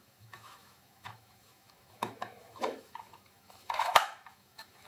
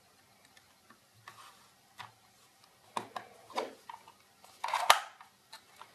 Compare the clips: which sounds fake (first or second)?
first